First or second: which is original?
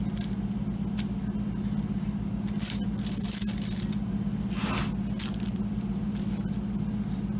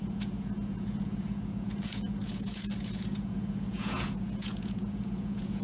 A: first